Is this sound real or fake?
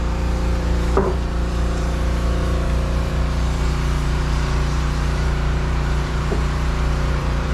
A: fake